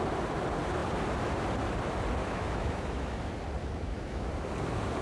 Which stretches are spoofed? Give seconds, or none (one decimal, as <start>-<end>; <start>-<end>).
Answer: 2.2-3.2; 3.6-4.3